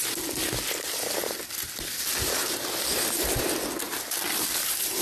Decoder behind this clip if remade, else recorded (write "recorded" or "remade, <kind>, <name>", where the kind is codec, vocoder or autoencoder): recorded